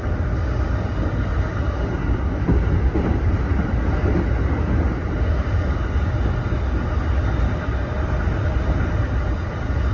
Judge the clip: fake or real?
real